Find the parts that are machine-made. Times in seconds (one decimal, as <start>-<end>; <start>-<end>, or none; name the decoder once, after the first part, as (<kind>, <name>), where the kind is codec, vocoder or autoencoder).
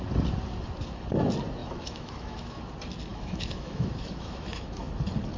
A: 1.6-2.6 (autoencoder, DAC-VAE); 3.1-4.9